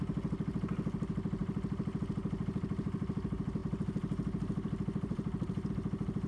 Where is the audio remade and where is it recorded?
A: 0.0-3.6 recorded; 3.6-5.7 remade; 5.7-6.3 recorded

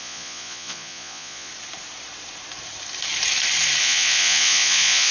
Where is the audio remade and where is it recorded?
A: 0.0-1.5 remade; 1.5-3.8 recorded; 3.8-5.1 remade

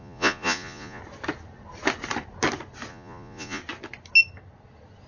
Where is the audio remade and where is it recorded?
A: 0.0-1.0 remade; 1.0-2.9 recorded; 2.9-3.6 remade; 3.6-5.1 recorded

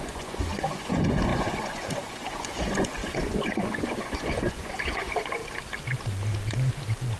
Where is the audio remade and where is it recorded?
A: 0.0-5.4 remade; 5.4-7.2 recorded

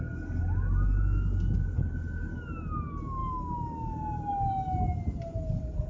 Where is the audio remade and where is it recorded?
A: 0.0-5.9 recorded

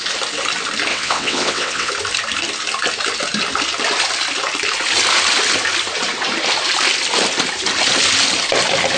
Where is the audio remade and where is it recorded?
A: 0.0-0.9 recorded; 0.9-1.9 remade; 1.9-9.0 recorded